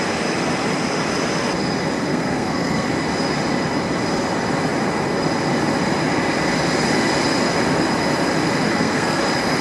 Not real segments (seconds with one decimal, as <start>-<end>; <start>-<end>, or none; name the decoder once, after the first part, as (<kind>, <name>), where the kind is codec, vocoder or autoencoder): 2.1-2.9 (codec, SNAC); 8.7-9.2